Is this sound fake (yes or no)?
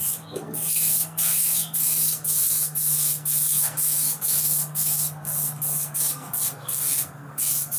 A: yes